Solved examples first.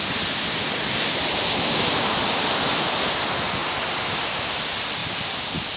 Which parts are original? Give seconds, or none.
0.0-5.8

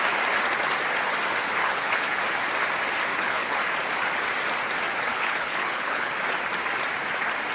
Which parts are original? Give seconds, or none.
0.0-1.6; 2.2-3.1; 3.6-5.1; 6.1-7.5

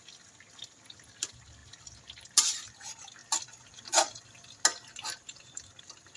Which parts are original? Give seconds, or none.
0.0-6.2

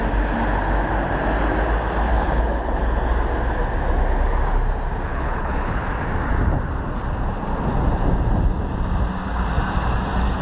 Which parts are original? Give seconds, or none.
0.0-2.1; 2.8-5.1; 5.8-10.4

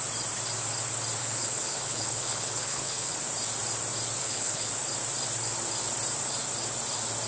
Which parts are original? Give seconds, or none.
0.0-1.2; 3.1-4.2; 4.7-7.3

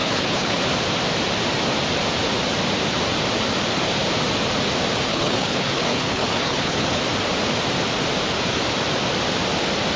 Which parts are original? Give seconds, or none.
0.6-5.1; 7.0-10.0

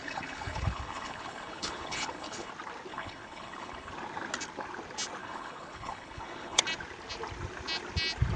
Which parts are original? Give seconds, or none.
2.5-2.9; 3.9-5.2; 6.6-8.4

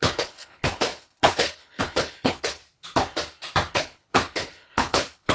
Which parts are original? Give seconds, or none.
2.6-3.7